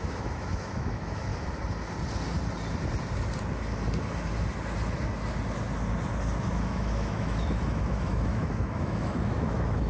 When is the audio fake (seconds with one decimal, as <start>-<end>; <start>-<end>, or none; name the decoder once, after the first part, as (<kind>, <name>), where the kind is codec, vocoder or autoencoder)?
0.0-1.3 (autoencoder, DAC-VAE); 6.4-9.9